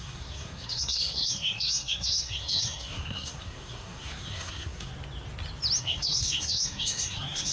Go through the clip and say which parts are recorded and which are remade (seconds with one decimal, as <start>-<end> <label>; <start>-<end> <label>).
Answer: 0.0-4.9 remade; 4.9-5.8 recorded; 5.8-7.5 remade